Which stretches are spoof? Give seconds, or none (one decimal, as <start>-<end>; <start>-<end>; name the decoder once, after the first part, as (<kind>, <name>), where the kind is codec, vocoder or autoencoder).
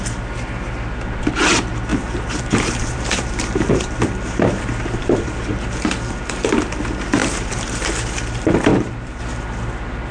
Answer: 1.9-4.6 (vocoder, BigVGAN v2); 5.0-5.5; 7.2-7.9; 8.7-9.2